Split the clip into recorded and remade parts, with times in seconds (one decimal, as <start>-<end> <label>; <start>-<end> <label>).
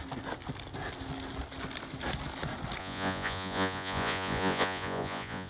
0.0-2.8 recorded; 2.8-5.5 remade